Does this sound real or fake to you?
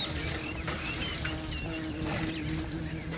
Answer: real